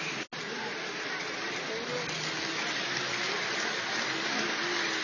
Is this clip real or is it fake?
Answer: real